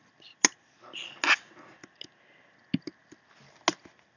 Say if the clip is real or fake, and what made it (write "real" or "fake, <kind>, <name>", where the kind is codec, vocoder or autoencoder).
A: real